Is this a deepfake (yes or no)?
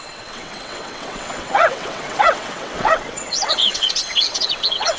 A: yes